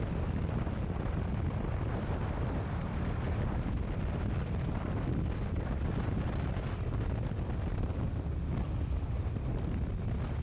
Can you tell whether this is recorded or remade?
recorded